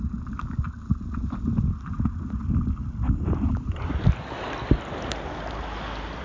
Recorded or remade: recorded